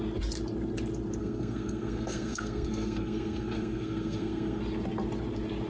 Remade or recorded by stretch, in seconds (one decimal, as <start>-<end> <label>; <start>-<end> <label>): 0.0-1.2 recorded; 1.2-4.6 remade; 4.6-5.7 recorded

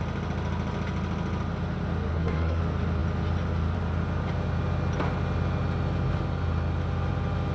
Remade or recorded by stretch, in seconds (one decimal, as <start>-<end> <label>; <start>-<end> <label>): 0.0-2.1 recorded; 2.1-2.6 remade; 2.6-7.5 recorded

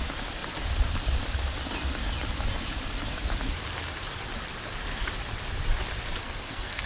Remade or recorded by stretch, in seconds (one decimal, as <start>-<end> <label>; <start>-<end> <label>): 0.0-6.2 recorded; 6.2-6.9 remade

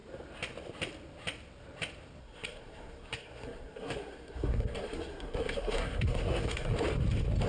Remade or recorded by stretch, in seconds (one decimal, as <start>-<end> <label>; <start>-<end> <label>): 0.0-2.2 recorded; 2.2-6.7 remade; 6.7-7.5 recorded

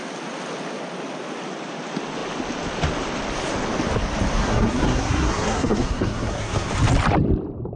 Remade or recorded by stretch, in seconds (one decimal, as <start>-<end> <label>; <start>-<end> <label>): 0.0-4.4 recorded; 4.4-6.7 remade; 6.7-7.8 recorded

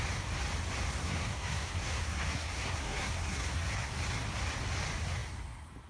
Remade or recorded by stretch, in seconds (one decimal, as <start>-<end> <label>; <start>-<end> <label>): 0.0-1.0 recorded; 1.0-3.9 remade; 3.9-5.9 recorded